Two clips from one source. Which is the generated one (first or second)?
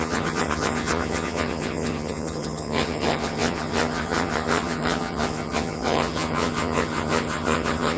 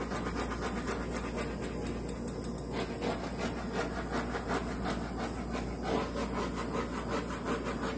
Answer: first